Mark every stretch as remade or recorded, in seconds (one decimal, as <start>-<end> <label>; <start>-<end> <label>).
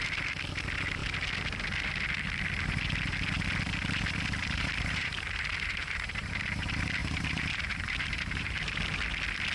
0.0-4.4 recorded; 4.4-6.3 remade; 6.3-7.0 recorded; 7.0-8.6 remade; 8.6-9.5 recorded